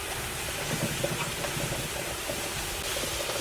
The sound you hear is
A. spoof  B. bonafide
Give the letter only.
B